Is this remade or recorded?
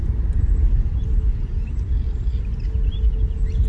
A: recorded